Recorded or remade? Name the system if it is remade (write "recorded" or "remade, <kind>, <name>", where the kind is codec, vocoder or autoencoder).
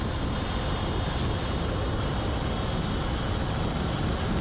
recorded